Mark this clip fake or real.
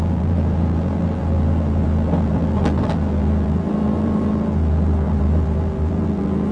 fake